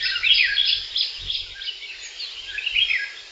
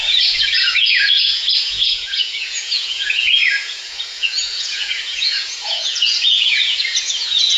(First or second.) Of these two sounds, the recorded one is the first